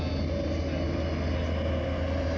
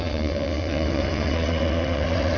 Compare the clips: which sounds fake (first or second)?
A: second